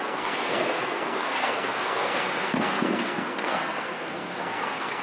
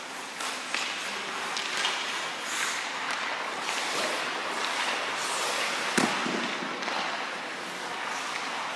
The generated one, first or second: first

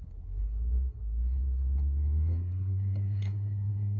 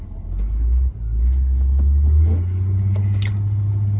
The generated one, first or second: first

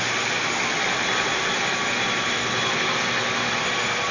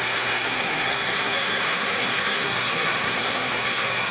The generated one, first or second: second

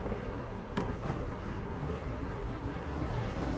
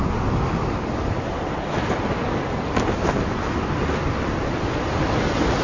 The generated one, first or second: first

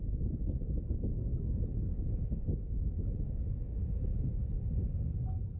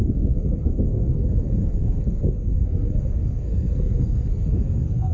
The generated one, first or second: second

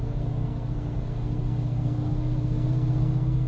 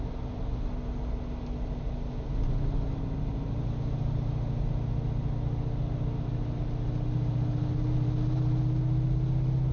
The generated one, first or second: first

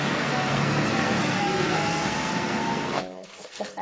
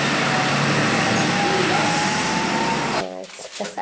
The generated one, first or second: first